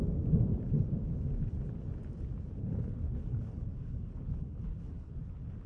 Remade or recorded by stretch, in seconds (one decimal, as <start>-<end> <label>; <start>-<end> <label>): 0.0-2.6 recorded; 2.6-5.1 remade; 5.1-5.7 recorded